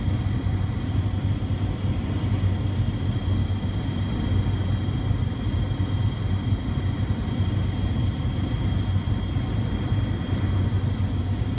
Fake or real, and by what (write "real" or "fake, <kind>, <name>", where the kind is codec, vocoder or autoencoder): real